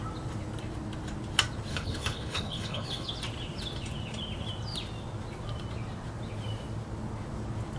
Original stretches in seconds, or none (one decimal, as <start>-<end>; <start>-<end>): 0.0-1.7; 3.1-7.8

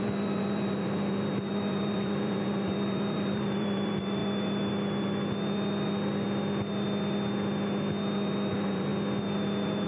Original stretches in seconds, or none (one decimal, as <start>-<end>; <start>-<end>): 4.2-8.5; 8.9-9.9

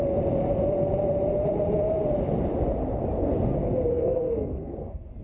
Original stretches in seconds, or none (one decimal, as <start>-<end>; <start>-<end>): 0.0-3.9

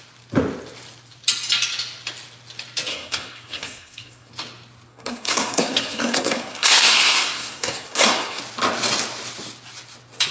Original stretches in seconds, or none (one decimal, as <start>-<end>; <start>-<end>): 0.0-2.9; 4.3-4.9; 8.4-10.3

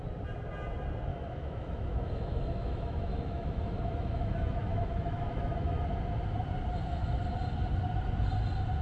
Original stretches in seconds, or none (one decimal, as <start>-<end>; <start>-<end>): 0.0-1.1; 5.8-8.8

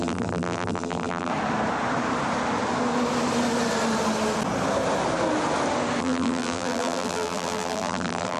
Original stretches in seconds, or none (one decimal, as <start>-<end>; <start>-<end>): 1.3-6.0

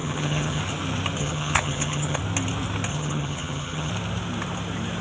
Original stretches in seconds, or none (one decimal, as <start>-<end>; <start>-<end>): 0.6-1.2; 2.2-2.9; 3.9-5.0